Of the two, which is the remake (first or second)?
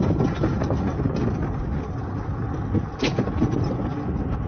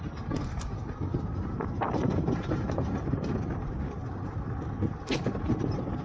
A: second